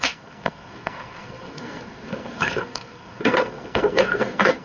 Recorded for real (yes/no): no